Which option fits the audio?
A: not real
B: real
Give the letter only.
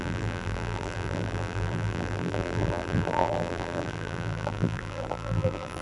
A